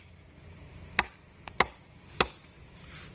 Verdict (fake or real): real